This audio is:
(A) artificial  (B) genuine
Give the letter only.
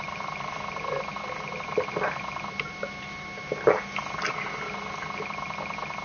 B